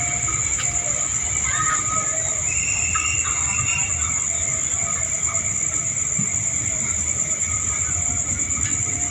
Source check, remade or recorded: recorded